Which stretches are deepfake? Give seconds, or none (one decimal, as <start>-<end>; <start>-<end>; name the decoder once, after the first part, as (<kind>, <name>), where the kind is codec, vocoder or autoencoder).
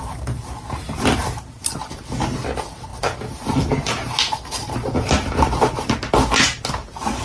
none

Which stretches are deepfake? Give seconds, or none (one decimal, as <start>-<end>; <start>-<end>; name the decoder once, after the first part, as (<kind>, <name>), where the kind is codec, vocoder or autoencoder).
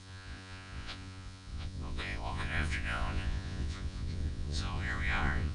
0.0-5.5 (vocoder, Vocos)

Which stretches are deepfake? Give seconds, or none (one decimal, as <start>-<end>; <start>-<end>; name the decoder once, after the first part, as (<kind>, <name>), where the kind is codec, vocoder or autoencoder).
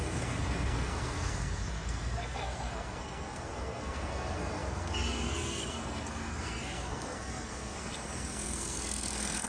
0.0-9.5 (codec, SNAC)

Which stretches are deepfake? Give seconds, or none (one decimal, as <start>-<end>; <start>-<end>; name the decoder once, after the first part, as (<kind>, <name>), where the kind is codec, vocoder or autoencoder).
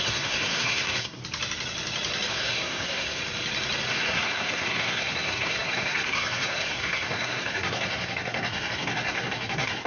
0.0-1.2 (codec, SNAC); 2.3-3.2; 3.9-9.9